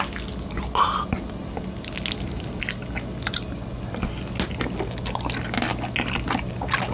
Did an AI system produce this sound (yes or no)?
no